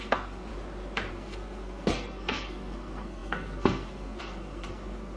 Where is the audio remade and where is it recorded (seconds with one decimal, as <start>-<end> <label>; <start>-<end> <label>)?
0.0-0.5 remade; 0.5-1.1 recorded; 1.1-5.2 remade